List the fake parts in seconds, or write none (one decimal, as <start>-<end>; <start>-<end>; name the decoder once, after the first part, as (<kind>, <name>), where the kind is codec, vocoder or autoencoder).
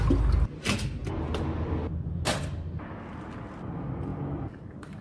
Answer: 4.1-5.0 (vocoder, BigVGAN v2)